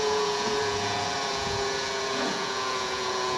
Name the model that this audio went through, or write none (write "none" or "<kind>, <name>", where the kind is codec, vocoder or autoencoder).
vocoder, Vocos